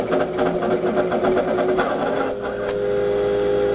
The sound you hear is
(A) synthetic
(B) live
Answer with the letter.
B